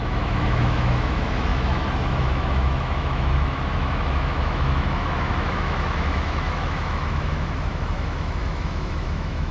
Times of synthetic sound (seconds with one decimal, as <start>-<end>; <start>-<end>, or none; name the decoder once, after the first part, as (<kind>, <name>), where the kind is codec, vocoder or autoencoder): 0.0-9.5 (autoencoder, DAC-VAE)